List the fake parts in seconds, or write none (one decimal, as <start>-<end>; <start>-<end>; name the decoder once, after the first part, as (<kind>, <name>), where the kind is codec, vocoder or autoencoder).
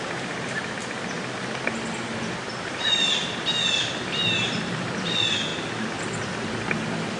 none